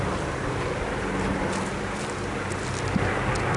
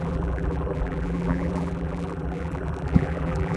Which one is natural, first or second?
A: first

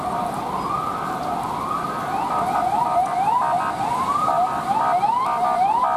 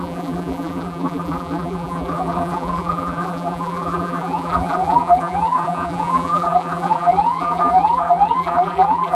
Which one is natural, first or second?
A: first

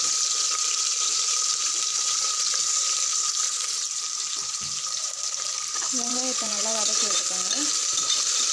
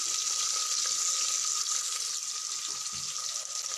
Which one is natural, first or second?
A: second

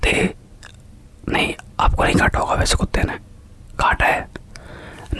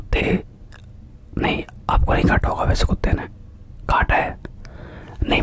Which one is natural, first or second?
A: second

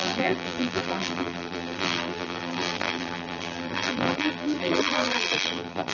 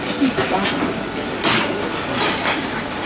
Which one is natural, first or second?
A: second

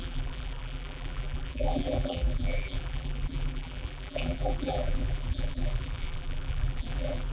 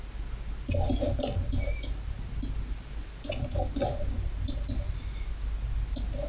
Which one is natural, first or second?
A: second